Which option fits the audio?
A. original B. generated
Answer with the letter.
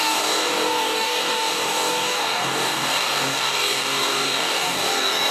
B